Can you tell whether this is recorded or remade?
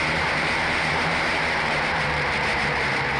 remade